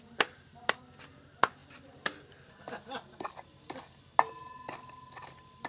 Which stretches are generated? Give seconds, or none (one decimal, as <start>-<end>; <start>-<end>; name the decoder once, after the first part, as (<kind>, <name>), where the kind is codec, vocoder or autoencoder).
none

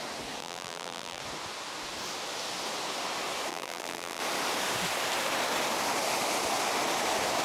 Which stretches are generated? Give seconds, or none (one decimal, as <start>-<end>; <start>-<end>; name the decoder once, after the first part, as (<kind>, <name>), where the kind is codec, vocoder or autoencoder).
0.4-1.2 (vocoder, BigVGAN v2); 3.5-4.2